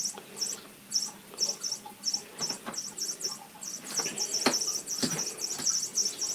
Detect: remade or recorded recorded